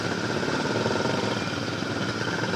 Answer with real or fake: real